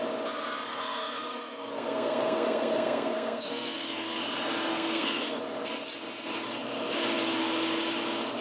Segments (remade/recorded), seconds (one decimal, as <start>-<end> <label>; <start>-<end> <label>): 0.0-0.7 recorded; 0.7-4.2 remade; 4.2-4.7 recorded; 4.7-5.4 remade; 5.4-8.4 recorded